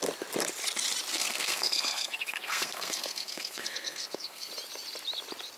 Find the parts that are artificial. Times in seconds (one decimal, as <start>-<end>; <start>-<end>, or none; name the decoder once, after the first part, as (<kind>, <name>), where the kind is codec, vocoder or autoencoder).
1.1-4.5 (codec, SNAC)